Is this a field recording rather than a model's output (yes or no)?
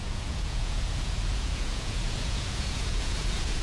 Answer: no